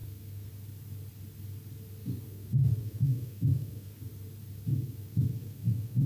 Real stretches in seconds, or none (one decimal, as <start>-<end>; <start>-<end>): 0.5-2.0; 4.1-4.7